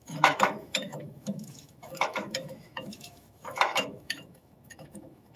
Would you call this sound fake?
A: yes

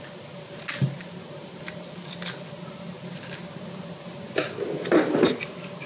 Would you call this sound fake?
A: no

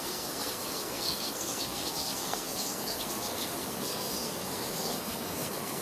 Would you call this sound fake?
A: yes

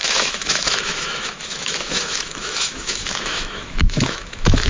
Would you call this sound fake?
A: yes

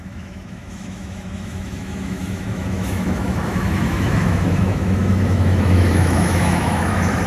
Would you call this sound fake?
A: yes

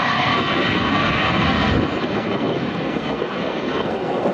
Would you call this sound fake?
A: yes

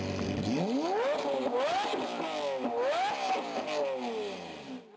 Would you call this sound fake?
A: no